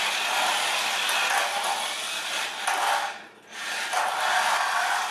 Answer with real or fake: real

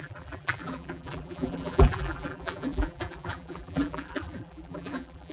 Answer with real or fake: fake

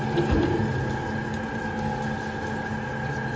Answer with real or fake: real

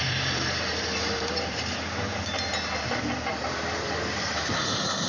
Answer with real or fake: fake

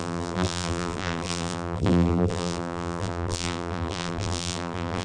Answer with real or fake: fake